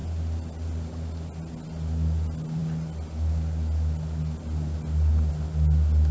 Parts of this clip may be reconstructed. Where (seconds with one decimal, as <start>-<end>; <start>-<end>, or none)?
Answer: none